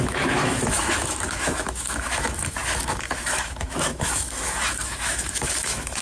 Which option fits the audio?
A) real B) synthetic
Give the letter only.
B